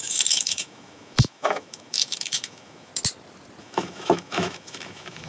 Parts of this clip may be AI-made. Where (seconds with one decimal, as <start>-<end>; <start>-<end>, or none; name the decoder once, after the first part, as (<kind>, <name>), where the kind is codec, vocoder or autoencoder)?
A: 0.0-2.9 (autoencoder, DAC-VAE); 3.6-5.3

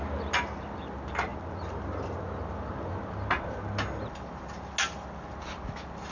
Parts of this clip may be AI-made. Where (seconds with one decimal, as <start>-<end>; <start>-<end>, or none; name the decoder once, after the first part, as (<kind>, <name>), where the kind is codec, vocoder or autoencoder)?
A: none

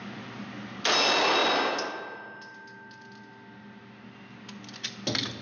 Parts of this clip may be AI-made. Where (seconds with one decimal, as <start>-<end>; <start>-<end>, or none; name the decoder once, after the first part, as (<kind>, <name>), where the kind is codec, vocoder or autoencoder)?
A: none

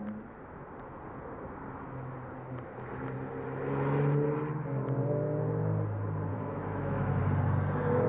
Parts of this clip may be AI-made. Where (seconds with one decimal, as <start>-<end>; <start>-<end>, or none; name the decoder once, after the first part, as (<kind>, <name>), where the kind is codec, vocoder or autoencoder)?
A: 6.3-7.2 (autoencoder, DAC-VAE)

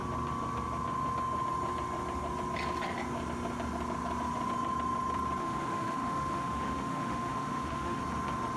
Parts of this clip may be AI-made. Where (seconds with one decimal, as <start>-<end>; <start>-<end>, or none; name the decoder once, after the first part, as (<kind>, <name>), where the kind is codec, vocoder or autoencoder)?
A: 5.4-8.0 (autoencoder, DAC-VAE)

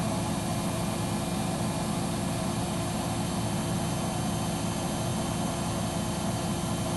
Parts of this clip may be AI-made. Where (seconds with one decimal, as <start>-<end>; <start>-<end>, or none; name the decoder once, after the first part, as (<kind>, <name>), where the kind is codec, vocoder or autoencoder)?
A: none

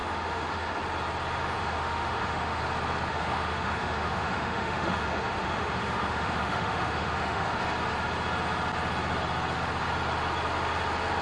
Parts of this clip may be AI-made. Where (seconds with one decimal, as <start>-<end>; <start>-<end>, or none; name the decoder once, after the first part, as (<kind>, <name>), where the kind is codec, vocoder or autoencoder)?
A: 0.0-0.8 (autoencoder, DAC-VAE); 1.4-2.6; 3.1-7.6